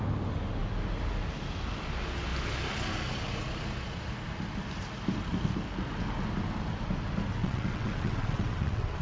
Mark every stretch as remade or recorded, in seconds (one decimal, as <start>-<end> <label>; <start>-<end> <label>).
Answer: 0.0-7.4 recorded; 7.4-9.0 remade